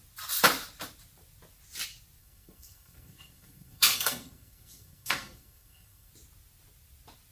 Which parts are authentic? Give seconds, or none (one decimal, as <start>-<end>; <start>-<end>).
0.0-2.2; 6.1-7.3